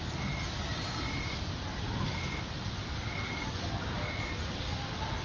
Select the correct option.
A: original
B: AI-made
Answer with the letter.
A